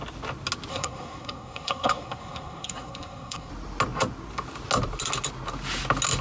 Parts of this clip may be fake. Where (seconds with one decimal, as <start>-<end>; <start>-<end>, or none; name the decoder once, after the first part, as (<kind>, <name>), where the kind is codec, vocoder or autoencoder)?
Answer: 0.7-3.5 (codec, SNAC)